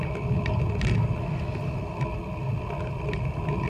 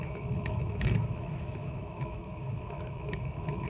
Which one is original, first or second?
first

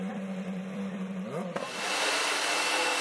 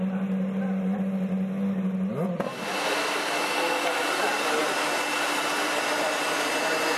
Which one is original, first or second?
second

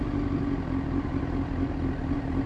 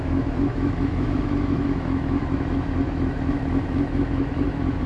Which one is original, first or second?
first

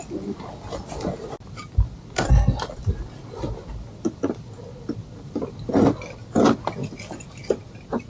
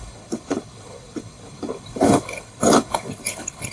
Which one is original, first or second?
first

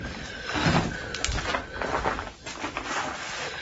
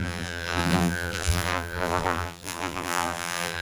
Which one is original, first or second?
first